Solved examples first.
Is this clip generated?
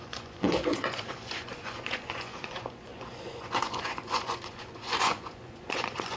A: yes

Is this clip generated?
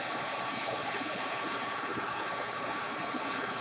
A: yes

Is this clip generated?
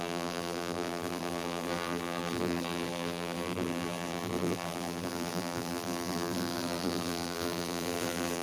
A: yes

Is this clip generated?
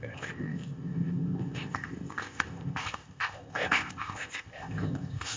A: yes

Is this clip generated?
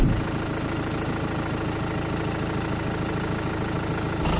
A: no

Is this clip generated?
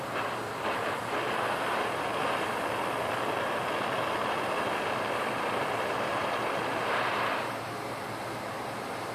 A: no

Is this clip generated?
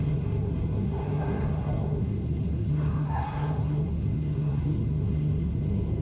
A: yes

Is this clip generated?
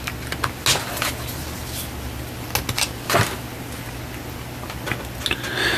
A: no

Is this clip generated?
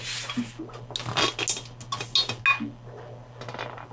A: no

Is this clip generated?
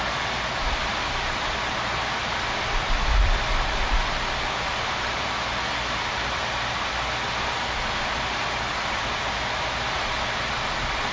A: no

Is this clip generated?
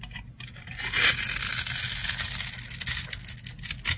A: no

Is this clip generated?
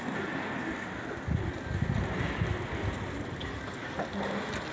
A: no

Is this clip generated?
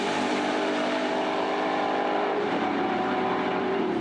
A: yes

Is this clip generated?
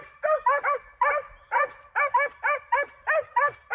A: no